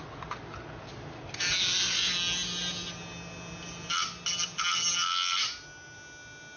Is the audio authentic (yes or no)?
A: yes